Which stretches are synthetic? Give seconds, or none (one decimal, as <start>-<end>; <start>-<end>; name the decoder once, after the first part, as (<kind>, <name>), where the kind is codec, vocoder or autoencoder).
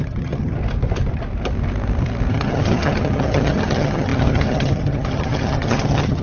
0.0-0.6 (vocoder, HiFi-GAN); 2.3-6.2